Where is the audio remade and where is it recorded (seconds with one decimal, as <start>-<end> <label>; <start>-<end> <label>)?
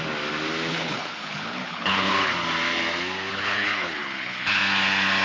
0.0-0.7 recorded; 0.7-2.3 remade; 2.3-3.3 recorded; 3.3-4.6 remade; 4.6-5.2 recorded